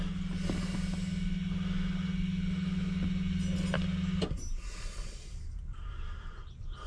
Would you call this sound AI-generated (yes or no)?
no